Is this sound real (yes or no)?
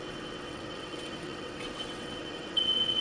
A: no